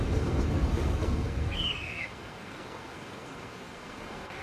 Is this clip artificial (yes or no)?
yes